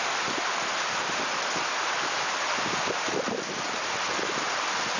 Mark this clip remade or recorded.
recorded